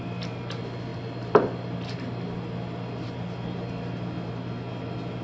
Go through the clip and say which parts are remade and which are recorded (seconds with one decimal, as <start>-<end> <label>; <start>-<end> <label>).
0.0-0.9 recorded; 0.9-4.0 remade; 4.0-5.2 recorded